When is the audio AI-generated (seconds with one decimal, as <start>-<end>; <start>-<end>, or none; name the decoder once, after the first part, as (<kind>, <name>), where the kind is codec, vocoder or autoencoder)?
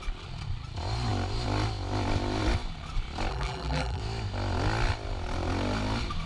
3.3-4.0 (vocoder, BigVGAN v2)